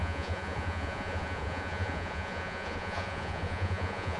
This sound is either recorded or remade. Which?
remade